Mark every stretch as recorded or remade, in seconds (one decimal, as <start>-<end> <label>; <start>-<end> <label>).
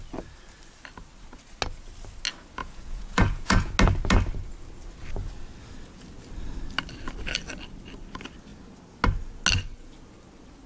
0.0-2.6 recorded; 2.6-3.7 remade; 3.7-10.7 recorded